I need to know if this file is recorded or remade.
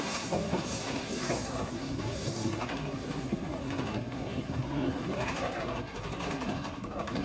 remade